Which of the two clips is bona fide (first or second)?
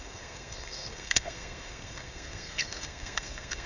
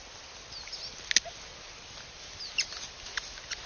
second